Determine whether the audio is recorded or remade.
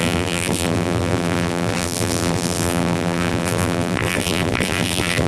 remade